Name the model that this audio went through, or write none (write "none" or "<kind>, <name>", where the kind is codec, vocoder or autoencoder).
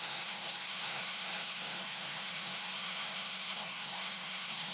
codec, SNAC